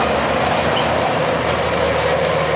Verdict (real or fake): real